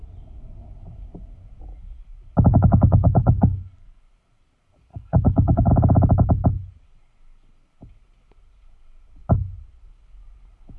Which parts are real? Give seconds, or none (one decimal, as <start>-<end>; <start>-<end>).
0.0-2.5; 4.0-4.9; 5.7-10.8